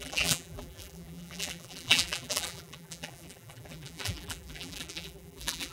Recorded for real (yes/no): no